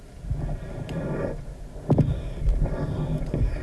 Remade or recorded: recorded